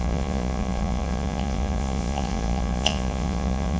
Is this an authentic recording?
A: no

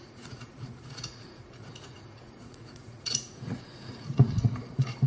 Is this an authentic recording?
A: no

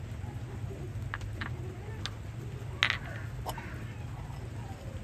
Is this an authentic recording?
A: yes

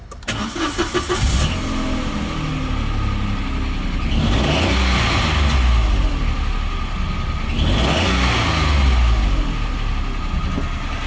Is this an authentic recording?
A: yes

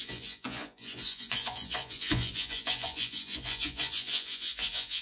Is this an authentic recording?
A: no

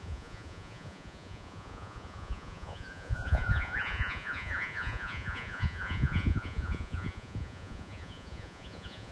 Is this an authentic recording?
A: no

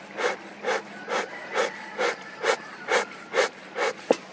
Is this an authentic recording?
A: yes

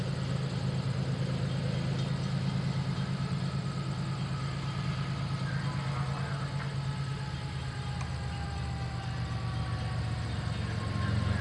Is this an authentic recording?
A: yes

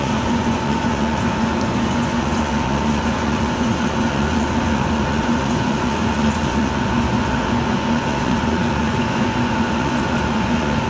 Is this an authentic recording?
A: no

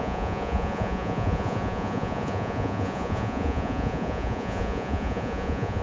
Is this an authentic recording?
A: no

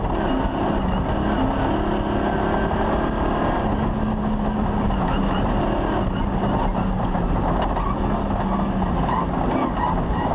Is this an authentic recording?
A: yes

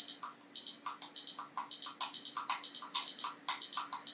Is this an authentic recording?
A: yes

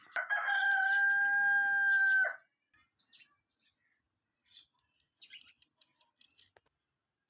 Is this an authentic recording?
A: yes